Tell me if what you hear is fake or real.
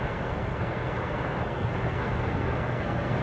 fake